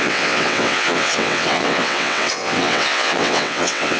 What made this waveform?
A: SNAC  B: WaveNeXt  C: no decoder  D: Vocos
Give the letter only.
B